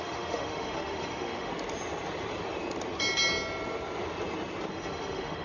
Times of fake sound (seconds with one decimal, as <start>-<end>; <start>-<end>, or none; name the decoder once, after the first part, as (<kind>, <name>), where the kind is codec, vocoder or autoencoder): 0.0-1.5 (autoencoder, DAC-VAE); 4.7-5.4